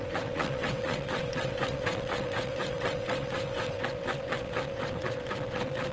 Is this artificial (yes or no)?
yes